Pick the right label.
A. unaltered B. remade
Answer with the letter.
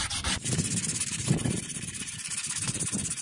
B